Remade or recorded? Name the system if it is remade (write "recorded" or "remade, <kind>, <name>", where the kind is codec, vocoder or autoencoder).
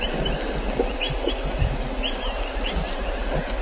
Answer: recorded